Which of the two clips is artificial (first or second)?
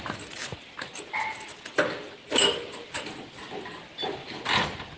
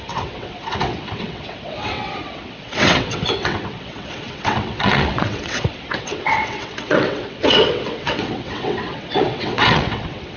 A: second